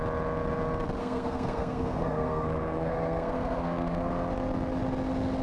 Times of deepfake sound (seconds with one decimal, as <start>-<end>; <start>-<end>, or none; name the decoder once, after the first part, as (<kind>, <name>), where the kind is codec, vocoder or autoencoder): 1.0-4.1 (codec, SNAC)